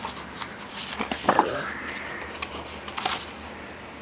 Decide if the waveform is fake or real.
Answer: real